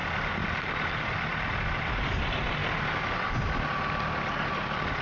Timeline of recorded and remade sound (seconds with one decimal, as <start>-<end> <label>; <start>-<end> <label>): 0.0-5.0 recorded